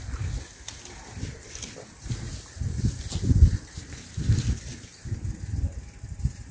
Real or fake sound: real